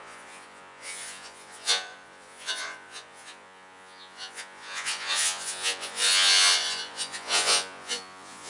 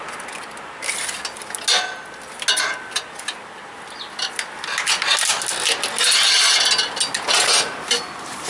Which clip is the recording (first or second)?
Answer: second